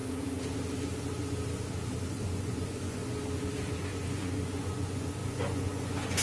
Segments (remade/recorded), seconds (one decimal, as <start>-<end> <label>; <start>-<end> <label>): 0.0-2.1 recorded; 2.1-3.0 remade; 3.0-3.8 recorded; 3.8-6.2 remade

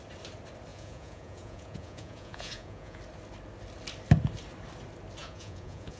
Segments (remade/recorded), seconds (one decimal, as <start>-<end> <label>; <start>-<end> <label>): 0.0-0.7 recorded; 0.7-3.0 remade; 3.0-5.2 recorded; 5.2-6.0 remade

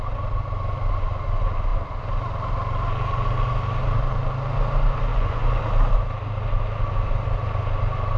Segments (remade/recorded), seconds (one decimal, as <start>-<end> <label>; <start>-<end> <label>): 0.0-5.1 recorded; 5.1-5.6 remade; 5.6-8.2 recorded

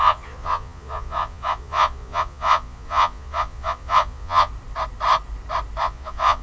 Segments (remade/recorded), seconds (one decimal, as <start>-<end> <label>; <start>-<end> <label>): 0.0-4.5 remade; 4.5-5.8 recorded; 5.8-6.4 remade

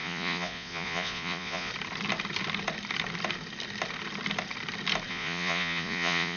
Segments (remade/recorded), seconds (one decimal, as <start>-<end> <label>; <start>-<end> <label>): 0.0-1.7 remade; 1.7-5.1 recorded; 5.1-6.4 remade

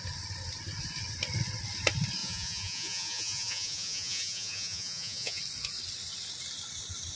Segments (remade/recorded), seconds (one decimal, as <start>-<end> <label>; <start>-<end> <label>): 0.0-2.2 recorded; 2.2-5.4 remade; 5.4-7.2 recorded